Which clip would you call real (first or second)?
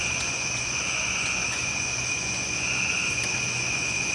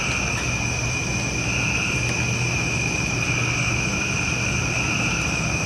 second